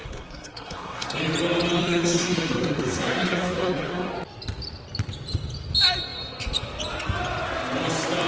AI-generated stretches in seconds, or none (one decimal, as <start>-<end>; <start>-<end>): 0.0-1.2; 1.8-4.1